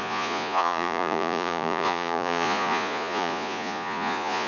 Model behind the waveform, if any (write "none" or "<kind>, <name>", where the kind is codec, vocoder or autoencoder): vocoder, Vocos